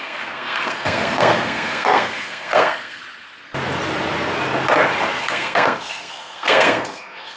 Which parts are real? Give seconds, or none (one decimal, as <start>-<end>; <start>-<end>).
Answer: 3.0-5.2